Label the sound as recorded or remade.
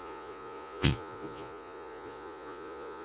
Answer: remade